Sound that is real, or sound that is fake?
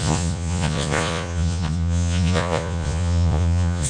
fake